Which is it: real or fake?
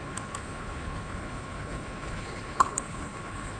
fake